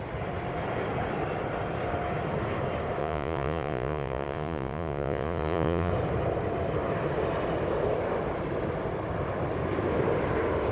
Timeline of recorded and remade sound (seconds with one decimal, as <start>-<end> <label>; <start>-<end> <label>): 0.0-3.0 recorded; 3.0-5.9 remade; 5.9-10.7 recorded